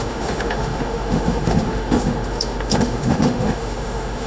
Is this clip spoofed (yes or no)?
yes